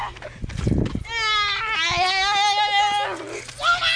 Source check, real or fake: real